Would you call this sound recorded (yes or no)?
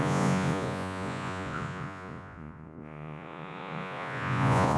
no